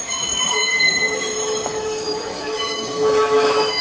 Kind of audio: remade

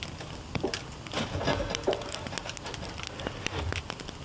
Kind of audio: recorded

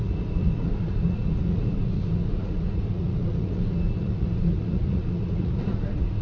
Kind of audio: remade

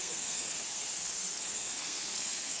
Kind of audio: remade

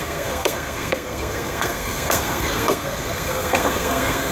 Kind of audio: remade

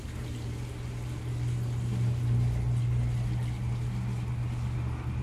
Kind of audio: recorded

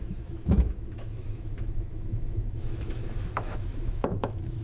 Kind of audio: remade